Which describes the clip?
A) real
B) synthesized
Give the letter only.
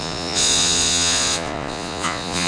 B